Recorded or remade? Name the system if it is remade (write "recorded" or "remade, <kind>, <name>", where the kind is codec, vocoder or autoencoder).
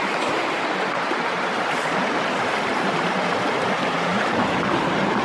remade, vocoder, BigVGAN v2